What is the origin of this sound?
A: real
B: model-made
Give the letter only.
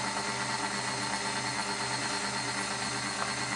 A